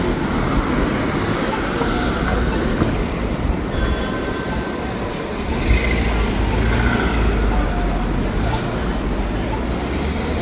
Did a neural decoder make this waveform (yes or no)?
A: no